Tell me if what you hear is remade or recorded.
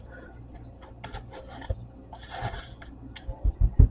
remade